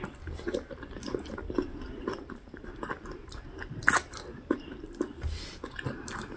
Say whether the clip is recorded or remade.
recorded